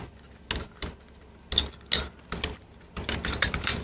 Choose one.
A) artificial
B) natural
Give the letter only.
B